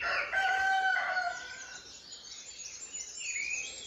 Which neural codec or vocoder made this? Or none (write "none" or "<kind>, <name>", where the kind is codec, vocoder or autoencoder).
none